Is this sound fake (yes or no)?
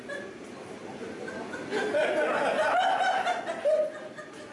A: no